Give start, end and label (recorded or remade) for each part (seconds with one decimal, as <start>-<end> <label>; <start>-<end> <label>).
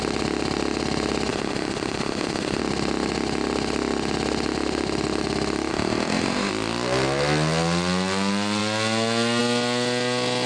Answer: 0.0-1.3 recorded; 1.3-2.6 remade; 2.6-5.7 recorded; 5.7-6.5 remade; 6.5-10.5 recorded